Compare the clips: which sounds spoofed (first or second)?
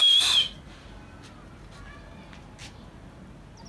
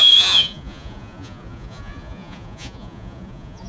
second